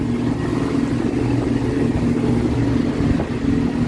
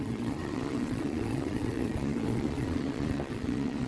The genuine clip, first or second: first